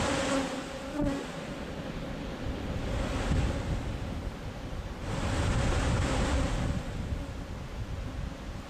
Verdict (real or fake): real